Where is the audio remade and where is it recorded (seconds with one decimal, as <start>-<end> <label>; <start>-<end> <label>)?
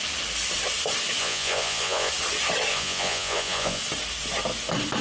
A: 0.0-1.2 recorded; 1.2-2.1 remade; 2.1-2.7 recorded; 2.7-3.8 remade; 3.8-5.0 recorded